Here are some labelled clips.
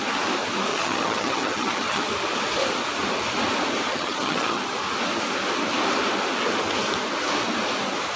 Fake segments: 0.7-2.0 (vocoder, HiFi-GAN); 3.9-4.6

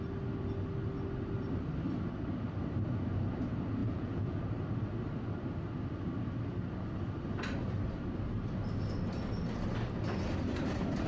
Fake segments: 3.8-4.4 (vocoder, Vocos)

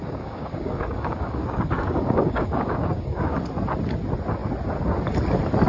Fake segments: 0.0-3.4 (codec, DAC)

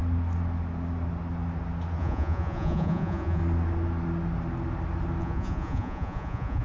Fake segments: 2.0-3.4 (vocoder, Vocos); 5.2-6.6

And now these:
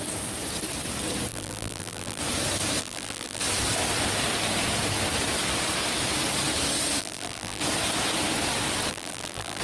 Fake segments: 1.3-2.2 (vocoder, BigVGAN v2); 2.8-3.4; 7.0-7.6; 8.9-9.6